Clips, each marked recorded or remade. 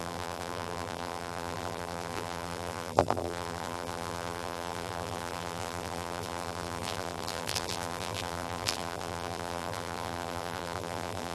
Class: remade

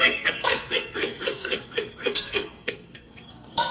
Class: remade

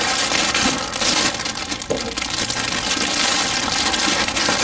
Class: recorded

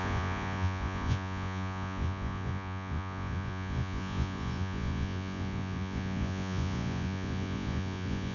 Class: remade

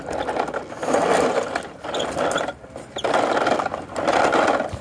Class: recorded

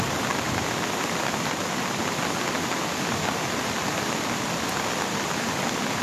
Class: recorded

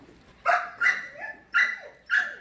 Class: recorded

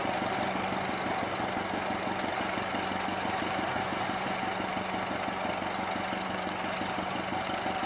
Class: recorded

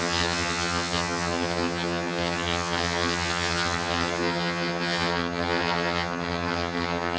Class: remade